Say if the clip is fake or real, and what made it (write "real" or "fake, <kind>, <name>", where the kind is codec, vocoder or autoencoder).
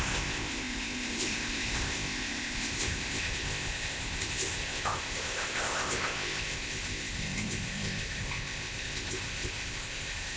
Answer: fake, codec, ZipCodec